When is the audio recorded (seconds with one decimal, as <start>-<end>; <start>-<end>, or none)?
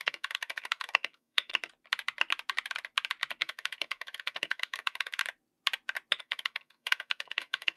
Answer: 1.5-3.4; 5.2-6.2